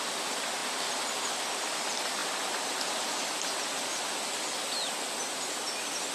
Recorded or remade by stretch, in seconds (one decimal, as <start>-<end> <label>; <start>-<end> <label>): 0.0-6.1 recorded